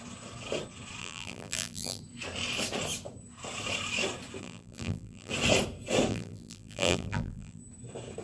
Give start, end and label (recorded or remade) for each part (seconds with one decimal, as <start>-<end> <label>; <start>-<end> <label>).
0.0-1.0 recorded; 1.0-2.0 remade; 2.0-4.4 recorded; 4.4-5.3 remade; 5.3-6.1 recorded; 6.1-7.6 remade; 7.6-8.2 recorded